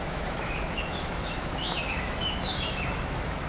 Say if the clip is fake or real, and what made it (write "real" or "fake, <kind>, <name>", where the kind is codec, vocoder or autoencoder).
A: fake, autoencoder, DAC-VAE